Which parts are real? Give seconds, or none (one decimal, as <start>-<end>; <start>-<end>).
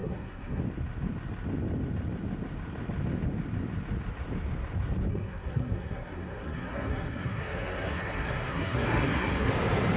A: 0.6-5.1; 9.5-10.0